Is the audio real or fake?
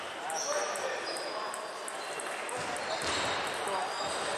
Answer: real